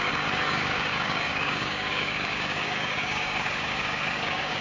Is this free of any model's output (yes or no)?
no